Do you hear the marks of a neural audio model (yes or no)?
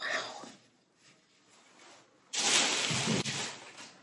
no